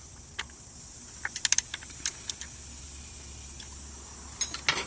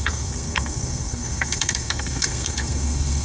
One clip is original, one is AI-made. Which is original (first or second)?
first